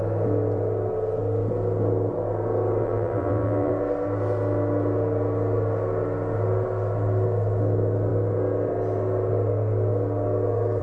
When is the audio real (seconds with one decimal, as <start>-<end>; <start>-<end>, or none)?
0.0-2.8; 3.7-10.8